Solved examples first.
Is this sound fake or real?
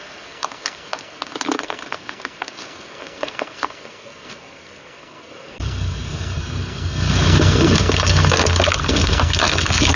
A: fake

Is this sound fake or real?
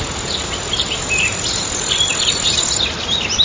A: real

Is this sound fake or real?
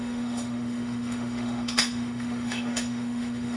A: fake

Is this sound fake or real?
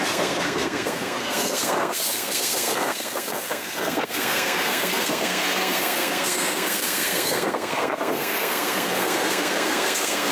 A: fake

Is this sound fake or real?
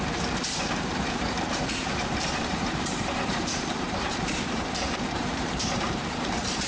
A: fake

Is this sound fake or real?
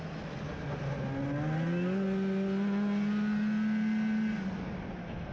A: real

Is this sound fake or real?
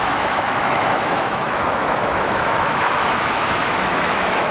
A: fake